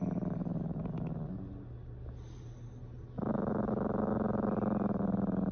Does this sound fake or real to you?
real